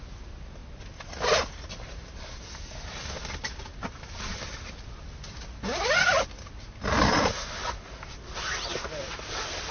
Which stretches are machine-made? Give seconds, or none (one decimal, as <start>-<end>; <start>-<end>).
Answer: none

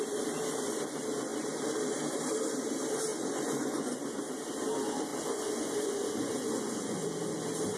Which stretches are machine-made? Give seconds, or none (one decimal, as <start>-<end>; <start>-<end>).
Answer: 3.1-4.2; 5.1-7.2

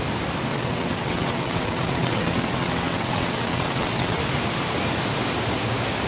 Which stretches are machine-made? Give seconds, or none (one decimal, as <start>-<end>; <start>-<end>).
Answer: 0.5-4.2